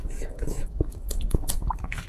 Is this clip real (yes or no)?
no